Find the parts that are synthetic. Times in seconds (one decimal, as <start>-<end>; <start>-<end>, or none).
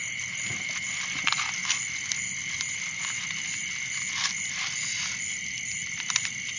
none